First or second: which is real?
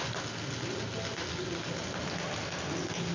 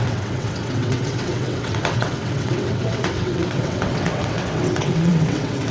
first